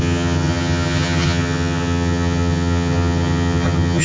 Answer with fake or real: fake